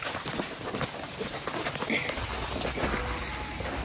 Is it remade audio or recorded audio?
recorded